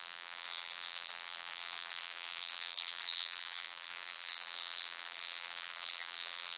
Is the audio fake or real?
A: fake